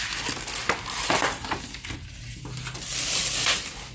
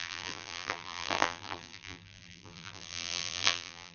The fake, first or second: second